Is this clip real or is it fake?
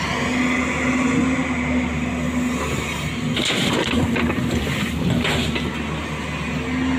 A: real